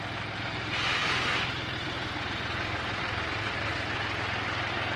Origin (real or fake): real